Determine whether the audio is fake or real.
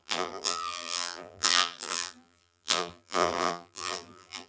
fake